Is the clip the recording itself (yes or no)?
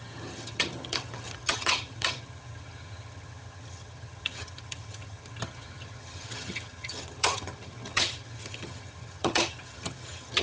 no